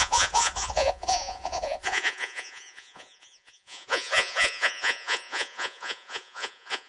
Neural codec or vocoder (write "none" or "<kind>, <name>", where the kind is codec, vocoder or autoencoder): vocoder, Vocos